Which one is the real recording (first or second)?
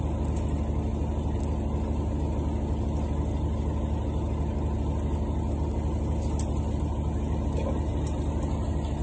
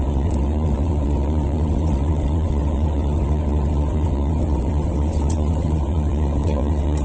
first